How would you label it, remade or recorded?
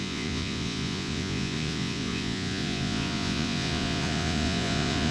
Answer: remade